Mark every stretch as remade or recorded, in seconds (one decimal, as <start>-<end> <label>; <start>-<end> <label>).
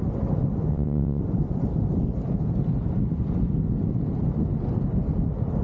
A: 0.0-0.7 recorded; 0.7-1.2 remade; 1.2-5.6 recorded